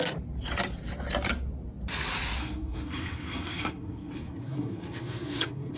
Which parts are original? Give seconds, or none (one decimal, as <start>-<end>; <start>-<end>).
0.0-2.4